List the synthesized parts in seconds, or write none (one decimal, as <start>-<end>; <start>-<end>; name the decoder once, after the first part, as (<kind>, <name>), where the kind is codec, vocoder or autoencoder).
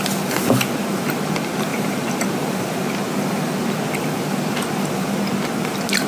1.7-2.9 (vocoder, BigVGAN v2)